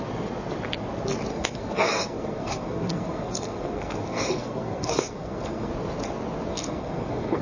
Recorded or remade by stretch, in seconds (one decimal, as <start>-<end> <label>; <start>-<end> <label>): 0.0-1.3 recorded; 1.3-5.7 remade; 5.7-6.5 recorded; 6.5-7.4 remade